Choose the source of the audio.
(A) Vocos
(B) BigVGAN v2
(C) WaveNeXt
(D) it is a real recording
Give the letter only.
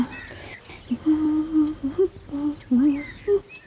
D